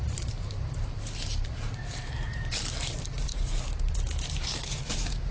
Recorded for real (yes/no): no